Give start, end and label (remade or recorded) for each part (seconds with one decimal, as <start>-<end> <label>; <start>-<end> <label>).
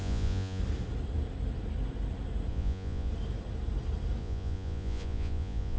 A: 0.0-0.6 remade; 0.6-2.5 recorded; 2.5-3.1 remade; 3.1-4.2 recorded; 4.2-5.8 remade